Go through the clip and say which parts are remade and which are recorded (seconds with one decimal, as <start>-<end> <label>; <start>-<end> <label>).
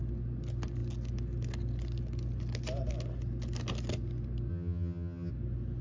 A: 0.0-4.5 recorded; 4.5-5.3 remade; 5.3-5.8 recorded